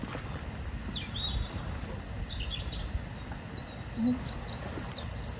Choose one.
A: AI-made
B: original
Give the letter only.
B